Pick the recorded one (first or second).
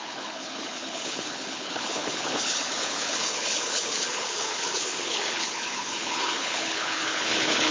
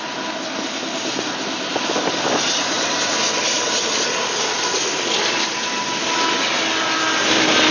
second